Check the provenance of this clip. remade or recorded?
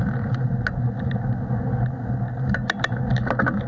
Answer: recorded